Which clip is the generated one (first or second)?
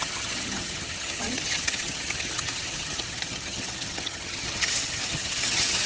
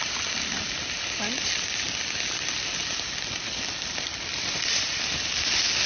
first